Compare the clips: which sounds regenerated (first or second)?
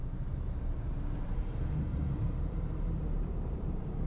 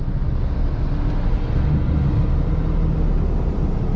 first